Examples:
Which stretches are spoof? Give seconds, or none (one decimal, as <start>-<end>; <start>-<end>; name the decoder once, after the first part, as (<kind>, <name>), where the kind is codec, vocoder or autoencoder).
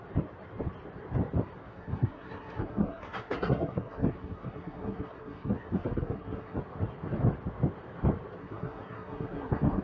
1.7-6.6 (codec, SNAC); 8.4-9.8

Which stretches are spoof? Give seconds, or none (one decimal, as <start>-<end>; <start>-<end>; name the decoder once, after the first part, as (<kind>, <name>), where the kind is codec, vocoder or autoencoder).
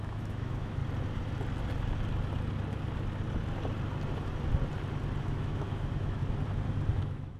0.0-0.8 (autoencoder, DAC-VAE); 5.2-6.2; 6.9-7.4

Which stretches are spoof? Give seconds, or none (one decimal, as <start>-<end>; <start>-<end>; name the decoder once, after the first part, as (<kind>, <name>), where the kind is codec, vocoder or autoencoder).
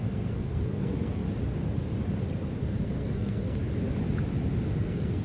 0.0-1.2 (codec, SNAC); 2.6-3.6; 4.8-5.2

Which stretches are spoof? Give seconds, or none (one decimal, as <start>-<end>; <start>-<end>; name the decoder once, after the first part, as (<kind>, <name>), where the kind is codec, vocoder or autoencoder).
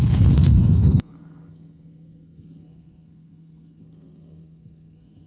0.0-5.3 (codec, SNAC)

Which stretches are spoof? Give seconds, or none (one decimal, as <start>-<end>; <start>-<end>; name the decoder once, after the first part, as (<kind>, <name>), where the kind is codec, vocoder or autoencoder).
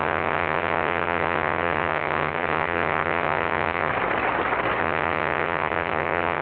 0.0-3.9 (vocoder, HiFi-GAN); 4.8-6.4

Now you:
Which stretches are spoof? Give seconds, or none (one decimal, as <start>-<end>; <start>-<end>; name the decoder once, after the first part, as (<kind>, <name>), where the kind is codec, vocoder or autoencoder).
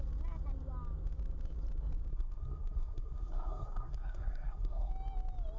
2.1-4.9 (codec, SNAC)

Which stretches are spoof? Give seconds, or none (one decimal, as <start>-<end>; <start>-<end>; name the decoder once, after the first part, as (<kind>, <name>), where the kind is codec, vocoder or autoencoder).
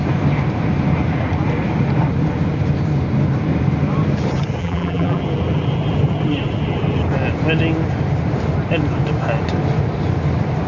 4.6-5.2 (vocoder, BigVGAN v2)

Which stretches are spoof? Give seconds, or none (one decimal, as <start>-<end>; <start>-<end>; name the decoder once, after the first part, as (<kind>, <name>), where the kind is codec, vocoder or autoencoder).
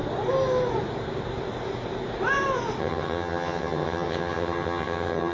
2.8-5.3 (vocoder, HiFi-GAN)